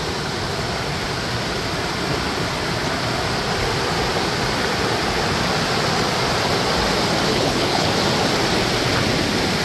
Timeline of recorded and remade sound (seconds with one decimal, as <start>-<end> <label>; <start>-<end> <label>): 0.0-7.3 recorded; 7.3-7.9 remade; 7.9-9.6 recorded